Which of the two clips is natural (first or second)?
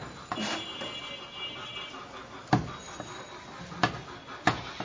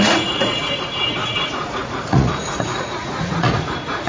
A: first